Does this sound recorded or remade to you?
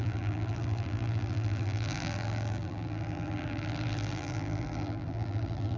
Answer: remade